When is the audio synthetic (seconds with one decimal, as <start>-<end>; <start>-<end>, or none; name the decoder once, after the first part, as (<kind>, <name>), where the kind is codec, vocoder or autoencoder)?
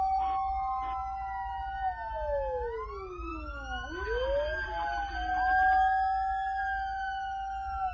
none